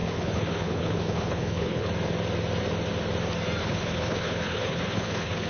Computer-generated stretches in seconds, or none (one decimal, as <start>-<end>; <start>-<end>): 0.0-1.9; 3.6-5.5